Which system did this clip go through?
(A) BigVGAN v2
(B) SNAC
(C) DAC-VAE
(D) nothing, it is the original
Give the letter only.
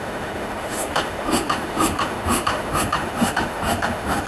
C